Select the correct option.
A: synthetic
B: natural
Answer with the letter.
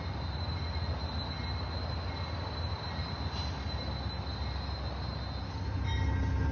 B